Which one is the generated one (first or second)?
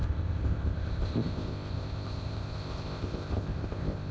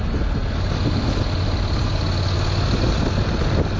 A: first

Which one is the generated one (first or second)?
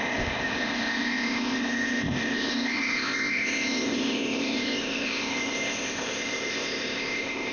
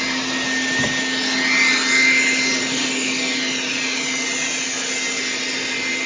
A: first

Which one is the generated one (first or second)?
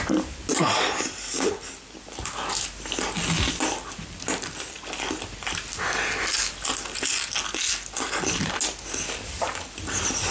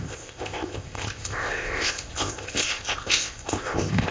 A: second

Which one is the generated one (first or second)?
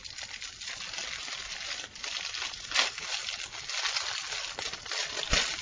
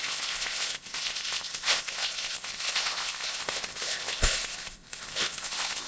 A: second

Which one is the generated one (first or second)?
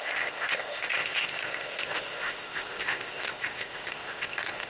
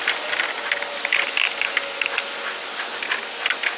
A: first